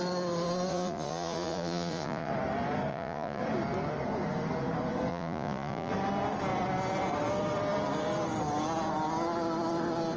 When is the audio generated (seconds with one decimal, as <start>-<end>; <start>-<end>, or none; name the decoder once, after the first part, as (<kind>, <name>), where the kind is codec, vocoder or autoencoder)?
0.7-2.3 (vocoder, Vocos); 2.9-3.4; 5.1-5.9